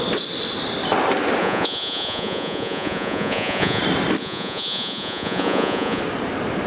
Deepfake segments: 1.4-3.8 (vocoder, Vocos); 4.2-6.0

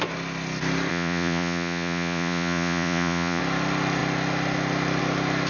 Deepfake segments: 0.9-3.4 (vocoder, Vocos)

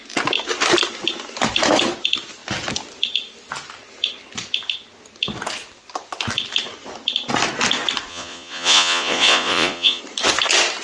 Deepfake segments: 8.1-10.0 (vocoder, Vocos)